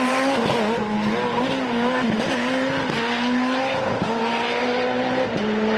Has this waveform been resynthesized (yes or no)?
no